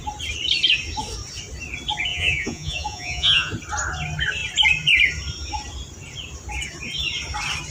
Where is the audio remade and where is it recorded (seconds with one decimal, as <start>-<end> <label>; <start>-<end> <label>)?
0.0-2.1 recorded; 2.1-3.5 remade; 3.5-7.7 recorded